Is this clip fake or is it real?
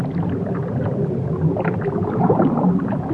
real